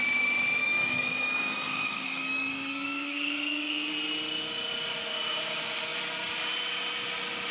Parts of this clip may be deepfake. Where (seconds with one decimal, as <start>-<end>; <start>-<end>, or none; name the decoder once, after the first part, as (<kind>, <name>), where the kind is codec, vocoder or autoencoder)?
0.6-3.9 (codec, DAC)